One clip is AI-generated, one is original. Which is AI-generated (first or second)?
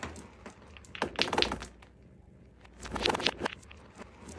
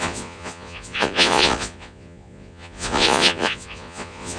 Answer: second